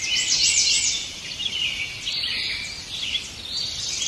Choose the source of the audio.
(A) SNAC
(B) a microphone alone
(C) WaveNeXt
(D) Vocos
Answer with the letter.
B